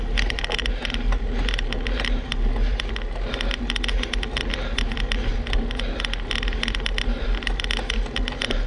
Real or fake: real